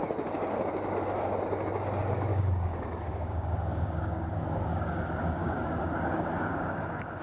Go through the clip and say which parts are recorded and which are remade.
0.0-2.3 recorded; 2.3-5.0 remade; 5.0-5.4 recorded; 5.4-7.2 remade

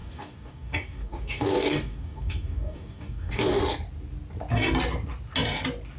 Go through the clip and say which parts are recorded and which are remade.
0.0-3.6 remade; 3.6-6.0 recorded

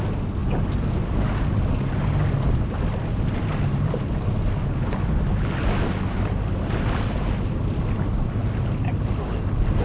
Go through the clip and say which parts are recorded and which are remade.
0.0-9.8 recorded

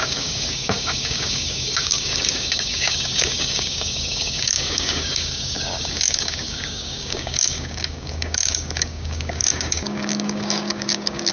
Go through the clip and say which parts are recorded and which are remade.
0.0-11.3 remade

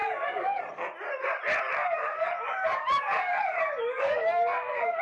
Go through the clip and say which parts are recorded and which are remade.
0.0-0.6 remade; 0.6-1.8 recorded; 1.8-5.0 remade

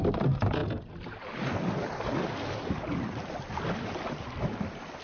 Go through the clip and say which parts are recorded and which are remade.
0.0-5.0 recorded

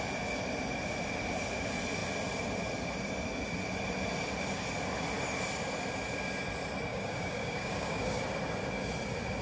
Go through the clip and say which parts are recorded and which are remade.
0.0-6.9 recorded; 6.9-8.2 remade; 8.2-9.4 recorded

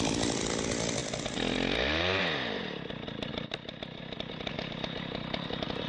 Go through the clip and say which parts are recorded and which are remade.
0.0-5.9 recorded